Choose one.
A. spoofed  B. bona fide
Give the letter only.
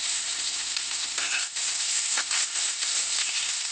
A